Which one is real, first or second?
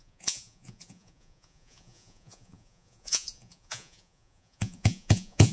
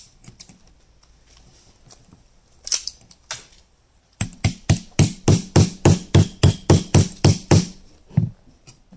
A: second